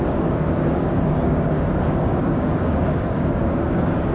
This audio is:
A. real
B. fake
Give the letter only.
B